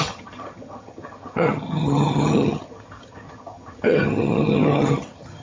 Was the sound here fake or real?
fake